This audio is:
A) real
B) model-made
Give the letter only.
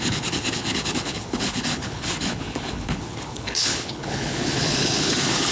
B